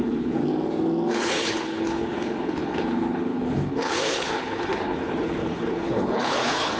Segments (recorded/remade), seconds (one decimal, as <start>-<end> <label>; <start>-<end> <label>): 0.0-0.4 remade; 0.4-1.1 recorded; 1.1-6.8 remade